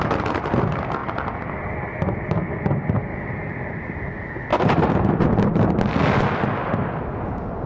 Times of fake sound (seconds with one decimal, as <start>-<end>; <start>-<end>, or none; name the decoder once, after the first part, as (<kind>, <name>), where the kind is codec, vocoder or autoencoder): 4.5-5.8 (vocoder, BigVGAN v2); 6.6-7.1